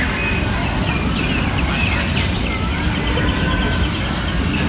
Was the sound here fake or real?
real